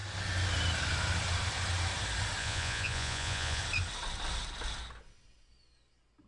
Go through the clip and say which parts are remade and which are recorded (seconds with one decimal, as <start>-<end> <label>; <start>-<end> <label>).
0.0-2.4 recorded; 2.4-3.6 remade; 3.6-6.3 recorded